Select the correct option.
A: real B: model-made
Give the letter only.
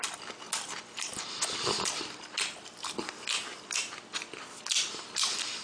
A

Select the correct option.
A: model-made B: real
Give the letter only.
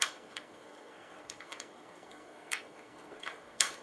A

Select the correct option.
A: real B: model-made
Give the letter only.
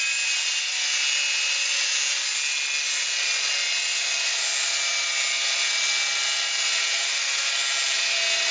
A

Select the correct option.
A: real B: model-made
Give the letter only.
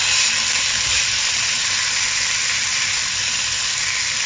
A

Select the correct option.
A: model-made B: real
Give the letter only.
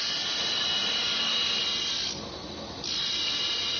B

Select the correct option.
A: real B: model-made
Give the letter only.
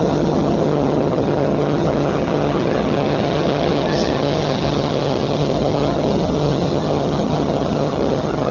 B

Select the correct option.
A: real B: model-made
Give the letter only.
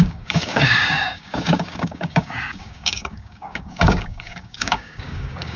B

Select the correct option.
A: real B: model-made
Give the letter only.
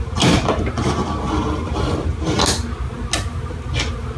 A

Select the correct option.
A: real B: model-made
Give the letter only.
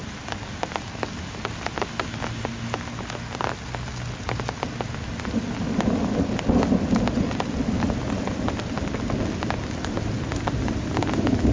A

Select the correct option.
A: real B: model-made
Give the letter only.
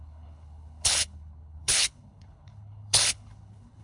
B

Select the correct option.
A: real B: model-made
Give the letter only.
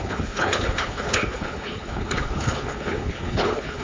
B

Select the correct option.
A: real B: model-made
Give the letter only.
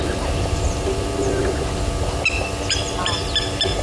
A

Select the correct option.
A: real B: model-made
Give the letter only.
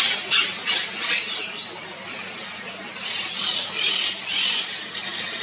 A